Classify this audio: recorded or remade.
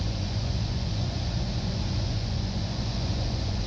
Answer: remade